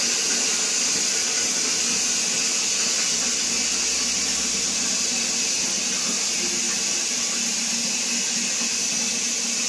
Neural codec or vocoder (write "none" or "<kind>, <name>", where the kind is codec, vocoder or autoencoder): none